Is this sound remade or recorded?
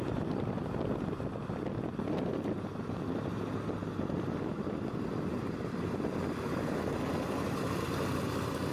recorded